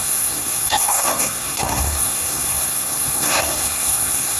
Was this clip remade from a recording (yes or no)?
yes